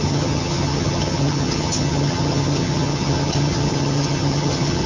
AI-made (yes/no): yes